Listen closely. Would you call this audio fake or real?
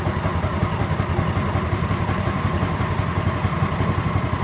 real